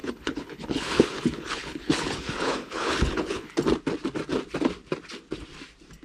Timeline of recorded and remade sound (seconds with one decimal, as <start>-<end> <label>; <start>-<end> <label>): 0.0-3.6 remade; 3.6-6.0 recorded